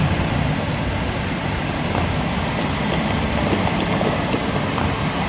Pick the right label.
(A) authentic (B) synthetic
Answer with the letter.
A